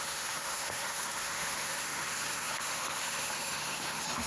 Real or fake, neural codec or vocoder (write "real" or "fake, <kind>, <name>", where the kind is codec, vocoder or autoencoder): fake, autoencoder, DAC-VAE